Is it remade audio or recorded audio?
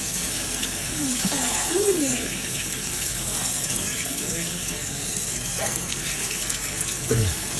remade